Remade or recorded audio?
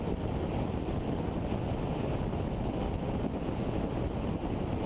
recorded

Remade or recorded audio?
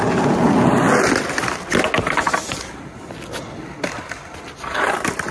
recorded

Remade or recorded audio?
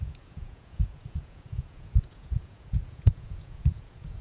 remade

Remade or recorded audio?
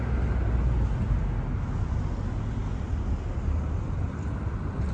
recorded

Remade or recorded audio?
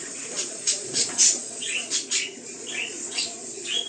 remade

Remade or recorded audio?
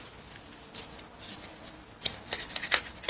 recorded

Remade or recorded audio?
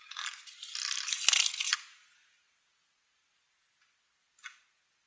recorded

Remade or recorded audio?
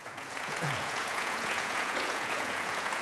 remade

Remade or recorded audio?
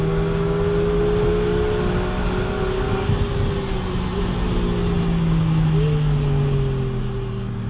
recorded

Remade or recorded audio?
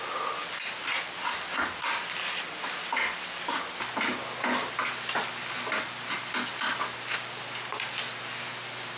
recorded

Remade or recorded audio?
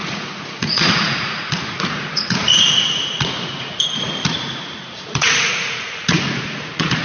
remade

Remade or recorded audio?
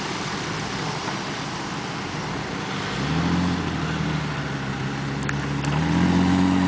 recorded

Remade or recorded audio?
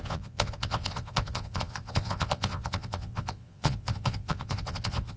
remade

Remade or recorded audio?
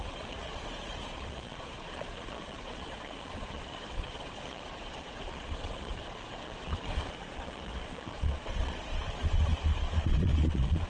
remade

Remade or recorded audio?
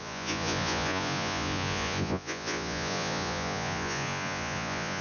remade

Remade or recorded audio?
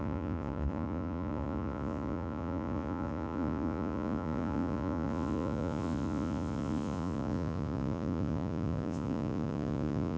remade